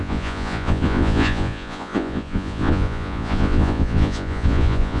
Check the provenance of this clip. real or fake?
fake